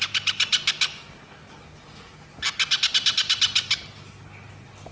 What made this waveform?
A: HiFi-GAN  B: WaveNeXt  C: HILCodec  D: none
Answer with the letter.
D